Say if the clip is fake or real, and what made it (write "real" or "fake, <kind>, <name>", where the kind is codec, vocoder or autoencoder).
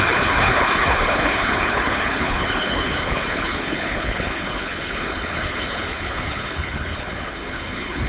fake, codec, HILCodec